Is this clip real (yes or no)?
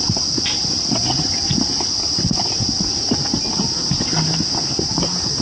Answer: yes